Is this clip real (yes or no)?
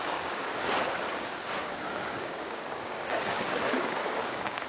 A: no